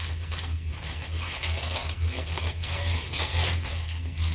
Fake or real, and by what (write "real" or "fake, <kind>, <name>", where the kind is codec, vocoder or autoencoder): fake, codec, SNAC